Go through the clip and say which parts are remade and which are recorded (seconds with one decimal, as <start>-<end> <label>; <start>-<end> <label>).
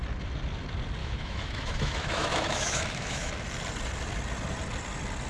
0.0-1.0 recorded; 1.0-3.3 remade; 3.3-5.3 recorded